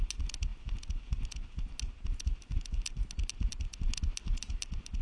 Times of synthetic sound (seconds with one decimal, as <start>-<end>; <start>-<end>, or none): none